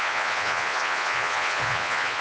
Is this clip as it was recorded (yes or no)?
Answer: no